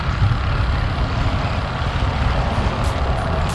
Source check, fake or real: real